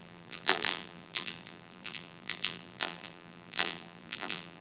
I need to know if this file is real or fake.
fake